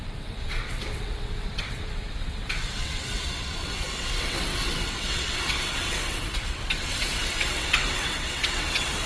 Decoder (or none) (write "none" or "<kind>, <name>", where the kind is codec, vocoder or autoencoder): vocoder, WaveNeXt